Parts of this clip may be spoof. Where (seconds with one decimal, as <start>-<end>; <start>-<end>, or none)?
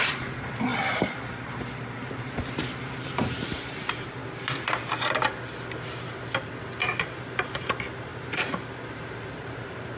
0.0-4.2; 7.0-8.1; 8.9-10.0